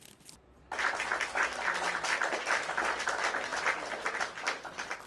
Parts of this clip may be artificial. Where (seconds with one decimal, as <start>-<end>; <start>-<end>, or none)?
none